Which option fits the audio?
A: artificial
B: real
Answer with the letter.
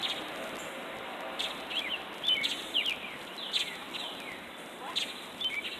B